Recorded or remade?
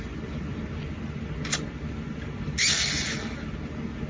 recorded